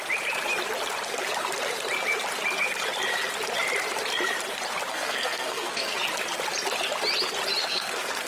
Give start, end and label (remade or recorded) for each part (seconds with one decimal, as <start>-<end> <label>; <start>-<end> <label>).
0.0-4.9 recorded; 4.9-6.0 remade; 6.0-7.6 recorded; 7.6-8.3 remade